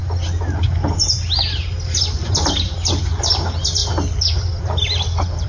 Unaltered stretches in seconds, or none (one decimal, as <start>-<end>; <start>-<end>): 0.0-5.5